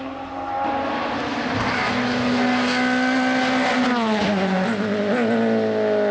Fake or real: real